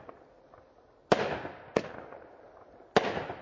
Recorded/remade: recorded